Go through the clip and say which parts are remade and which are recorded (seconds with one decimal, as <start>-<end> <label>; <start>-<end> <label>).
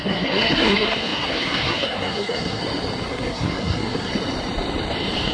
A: 0.0-2.6 remade; 2.6-3.1 recorded; 3.1-4.1 remade; 4.1-5.3 recorded